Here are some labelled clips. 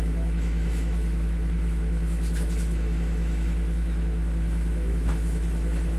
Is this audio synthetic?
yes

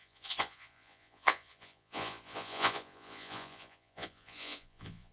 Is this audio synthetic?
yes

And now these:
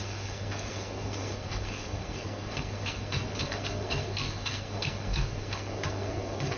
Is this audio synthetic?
yes